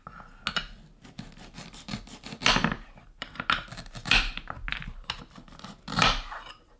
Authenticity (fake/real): real